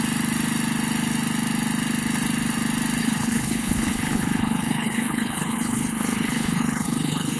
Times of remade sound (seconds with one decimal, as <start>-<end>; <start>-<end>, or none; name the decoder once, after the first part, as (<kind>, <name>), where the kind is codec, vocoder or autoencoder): 3.0-7.4 (codec, HILCodec)